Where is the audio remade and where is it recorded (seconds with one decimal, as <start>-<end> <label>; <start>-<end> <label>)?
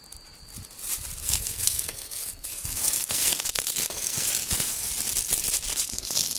0.0-1.2 recorded; 1.2-4.9 remade; 4.9-5.7 recorded; 5.7-6.4 remade